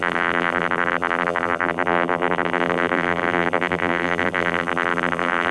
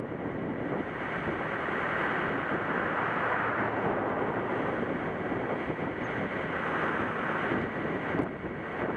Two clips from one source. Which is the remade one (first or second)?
first